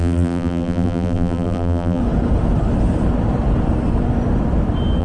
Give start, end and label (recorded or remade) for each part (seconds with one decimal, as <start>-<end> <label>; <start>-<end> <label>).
0.0-2.0 remade; 2.0-5.0 recorded